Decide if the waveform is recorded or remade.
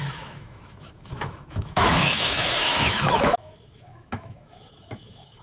remade